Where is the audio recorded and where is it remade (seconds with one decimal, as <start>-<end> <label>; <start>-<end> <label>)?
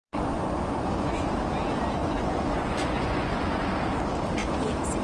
0.0-1.3 remade; 1.3-2.0 recorded; 2.0-3.7 remade; 3.7-5.0 recorded